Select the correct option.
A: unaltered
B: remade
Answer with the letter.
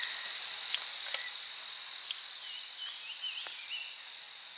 A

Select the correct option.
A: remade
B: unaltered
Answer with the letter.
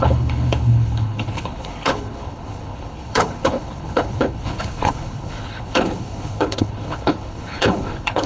A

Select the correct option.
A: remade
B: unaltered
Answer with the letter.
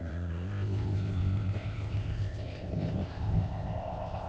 A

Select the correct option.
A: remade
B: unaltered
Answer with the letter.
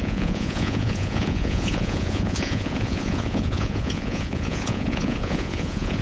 A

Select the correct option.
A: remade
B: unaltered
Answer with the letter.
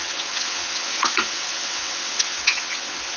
A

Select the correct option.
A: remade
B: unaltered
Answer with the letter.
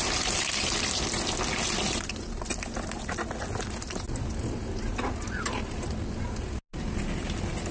B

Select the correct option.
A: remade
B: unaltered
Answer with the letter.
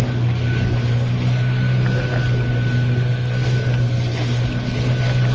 B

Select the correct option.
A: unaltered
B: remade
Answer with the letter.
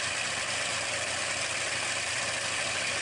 A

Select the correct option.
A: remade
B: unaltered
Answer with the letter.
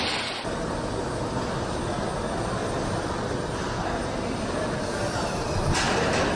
B